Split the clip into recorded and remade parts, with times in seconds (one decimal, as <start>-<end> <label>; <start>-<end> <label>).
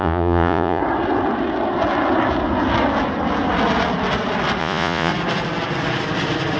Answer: 0.0-0.8 remade; 0.8-4.6 recorded; 4.6-5.1 remade; 5.1-6.6 recorded